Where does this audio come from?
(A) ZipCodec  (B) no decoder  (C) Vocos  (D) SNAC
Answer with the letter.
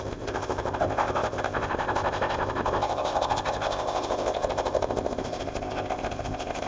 A